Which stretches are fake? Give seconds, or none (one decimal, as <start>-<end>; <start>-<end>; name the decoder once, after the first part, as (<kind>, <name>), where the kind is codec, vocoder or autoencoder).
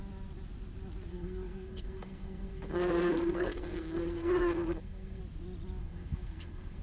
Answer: 1.1-5.2 (codec, SNAC); 5.8-6.8